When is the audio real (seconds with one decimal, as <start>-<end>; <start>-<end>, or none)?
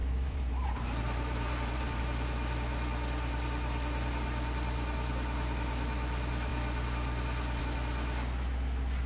2.0-9.1